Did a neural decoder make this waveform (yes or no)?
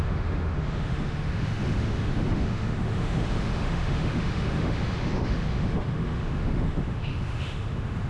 yes